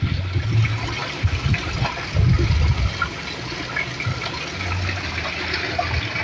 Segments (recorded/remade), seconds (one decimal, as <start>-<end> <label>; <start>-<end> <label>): 0.0-1.0 recorded; 1.0-4.7 remade; 4.7-6.2 recorded